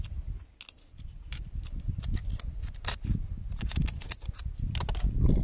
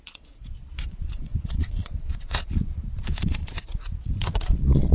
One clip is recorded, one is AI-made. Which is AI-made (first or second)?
second